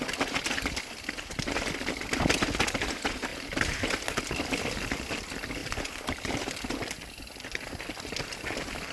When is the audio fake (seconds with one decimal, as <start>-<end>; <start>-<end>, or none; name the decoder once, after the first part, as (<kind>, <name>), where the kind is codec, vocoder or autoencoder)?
3.3-3.8 (vocoder, BigVGAN v2)